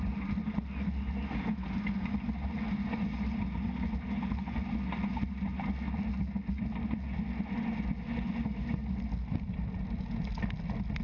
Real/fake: real